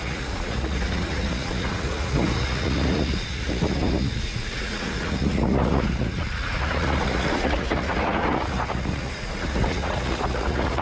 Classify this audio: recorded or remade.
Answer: remade